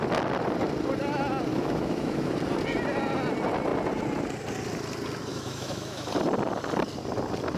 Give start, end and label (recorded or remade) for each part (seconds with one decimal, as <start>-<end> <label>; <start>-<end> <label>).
0.0-1.5 recorded; 1.5-2.3 remade; 2.3-5.3 recorded; 5.3-6.1 remade; 6.1-7.6 recorded